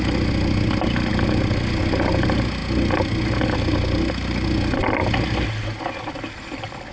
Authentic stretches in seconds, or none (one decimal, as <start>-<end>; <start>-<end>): 0.0-6.9